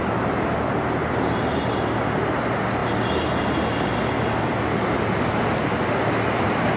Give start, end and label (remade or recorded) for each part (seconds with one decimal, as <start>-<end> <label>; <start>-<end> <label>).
0.0-6.8 recorded